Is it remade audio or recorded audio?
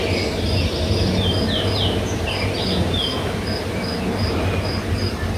recorded